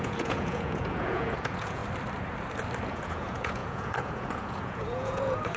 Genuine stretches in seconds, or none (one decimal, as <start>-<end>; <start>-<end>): 1.8-2.9